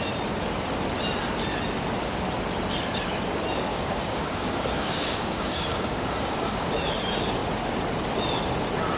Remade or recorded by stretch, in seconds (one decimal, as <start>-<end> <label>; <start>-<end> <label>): 0.0-3.7 recorded; 3.7-6.7 remade; 6.7-9.0 recorded